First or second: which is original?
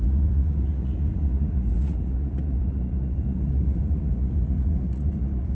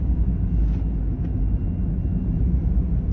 second